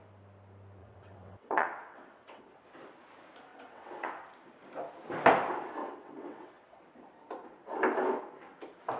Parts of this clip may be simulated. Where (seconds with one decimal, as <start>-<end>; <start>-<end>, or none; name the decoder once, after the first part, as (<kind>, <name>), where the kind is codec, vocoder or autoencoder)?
0.8-2.4 (vocoder, WaveNeXt); 3.5-4.1; 5.8-6.8